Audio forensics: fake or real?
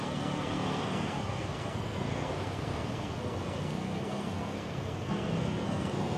fake